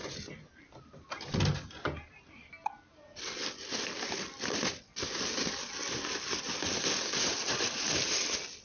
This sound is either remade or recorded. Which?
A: recorded